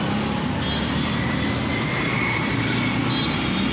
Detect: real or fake fake